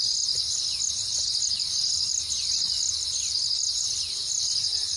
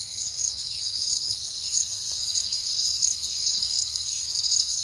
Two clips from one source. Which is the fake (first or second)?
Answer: second